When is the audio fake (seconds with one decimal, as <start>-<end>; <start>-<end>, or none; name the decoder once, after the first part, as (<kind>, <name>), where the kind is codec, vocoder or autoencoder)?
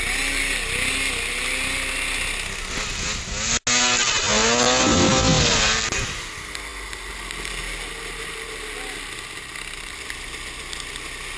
none